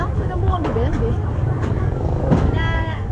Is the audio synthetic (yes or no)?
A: yes